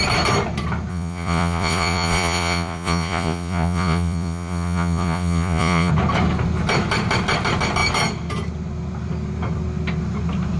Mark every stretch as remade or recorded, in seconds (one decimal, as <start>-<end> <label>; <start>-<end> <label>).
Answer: 0.0-0.9 recorded; 0.9-5.9 remade; 5.9-10.6 recorded